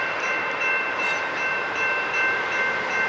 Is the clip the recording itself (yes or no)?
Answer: no